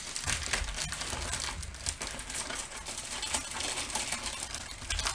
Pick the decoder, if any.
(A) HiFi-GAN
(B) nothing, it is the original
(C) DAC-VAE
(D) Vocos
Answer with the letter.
B